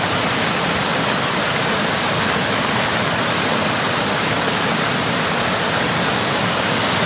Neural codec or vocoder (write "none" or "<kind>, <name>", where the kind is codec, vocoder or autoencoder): none